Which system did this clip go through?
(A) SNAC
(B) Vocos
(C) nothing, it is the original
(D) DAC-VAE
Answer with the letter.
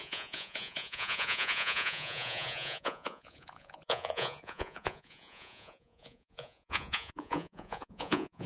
B